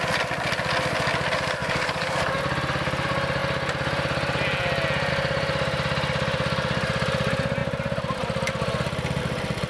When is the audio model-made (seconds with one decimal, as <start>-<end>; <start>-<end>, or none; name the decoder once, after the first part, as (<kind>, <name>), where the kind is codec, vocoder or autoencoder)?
1.6-2.4 (codec, DAC)